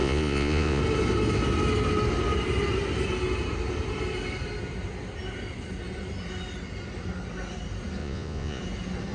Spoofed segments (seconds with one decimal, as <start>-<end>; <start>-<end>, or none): 0.0-0.8; 8.0-8.6